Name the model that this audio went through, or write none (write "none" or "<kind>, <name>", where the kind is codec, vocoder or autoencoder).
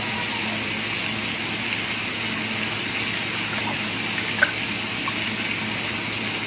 none